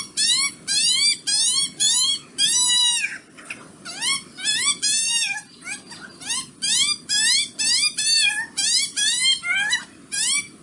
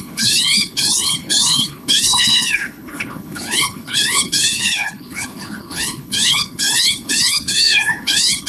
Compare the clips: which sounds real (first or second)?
first